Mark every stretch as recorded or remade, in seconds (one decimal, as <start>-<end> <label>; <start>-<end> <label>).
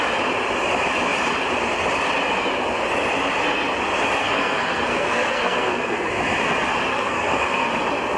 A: 0.0-4.2 recorded; 4.2-6.1 remade; 6.1-6.9 recorded; 6.9-7.7 remade; 7.7-8.2 recorded